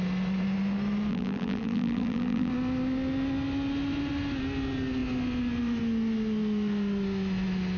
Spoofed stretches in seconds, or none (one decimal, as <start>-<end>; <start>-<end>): 1.1-2.5